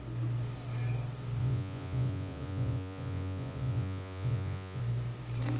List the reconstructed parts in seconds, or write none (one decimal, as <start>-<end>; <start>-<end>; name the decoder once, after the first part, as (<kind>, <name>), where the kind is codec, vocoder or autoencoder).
1.4-4.8 (vocoder, Vocos)